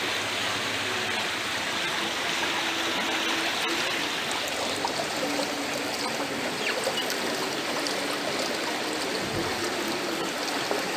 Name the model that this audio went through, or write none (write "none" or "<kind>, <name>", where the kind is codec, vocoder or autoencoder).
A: none